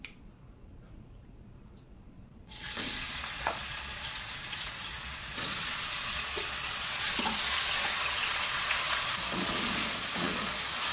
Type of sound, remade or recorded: remade